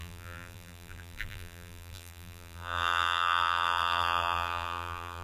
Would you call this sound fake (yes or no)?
yes